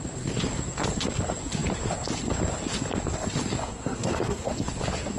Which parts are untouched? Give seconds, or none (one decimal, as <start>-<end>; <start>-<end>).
0.0-3.6; 4.5-5.2